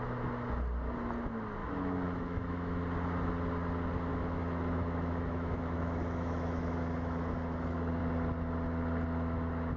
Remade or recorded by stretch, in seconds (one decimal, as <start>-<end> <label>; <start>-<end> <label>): 0.0-1.6 recorded; 1.6-2.8 remade; 2.8-4.1 recorded; 4.1-8.0 remade; 8.0-9.8 recorded